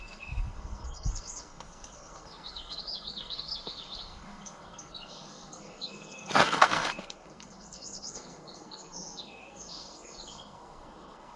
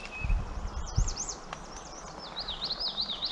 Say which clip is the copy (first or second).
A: first